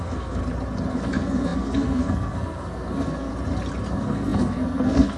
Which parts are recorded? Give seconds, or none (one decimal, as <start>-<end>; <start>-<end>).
0.4-0.9; 3.3-3.9

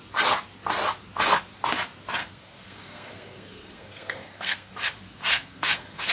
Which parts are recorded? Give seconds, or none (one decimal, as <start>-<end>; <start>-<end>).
0.0-2.2; 4.7-5.3

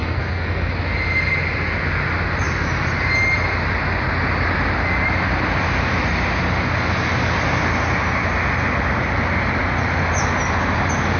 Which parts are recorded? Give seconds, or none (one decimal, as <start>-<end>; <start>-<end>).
0.7-11.2

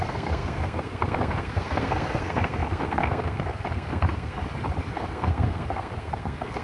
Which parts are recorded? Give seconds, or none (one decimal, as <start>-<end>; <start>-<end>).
4.4-4.9

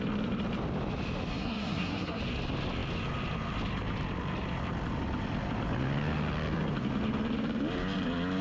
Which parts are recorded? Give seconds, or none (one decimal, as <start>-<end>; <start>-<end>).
0.0-1.3; 2.2-8.4

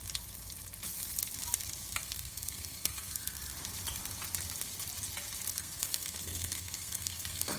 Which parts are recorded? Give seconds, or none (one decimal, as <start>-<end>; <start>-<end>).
0.0-1.9; 3.4-5.5

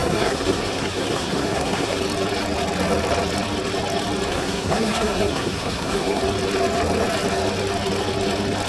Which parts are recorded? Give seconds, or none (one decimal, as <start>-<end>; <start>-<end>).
2.0-4.3; 6.2-8.7